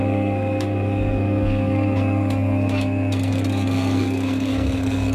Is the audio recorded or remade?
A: remade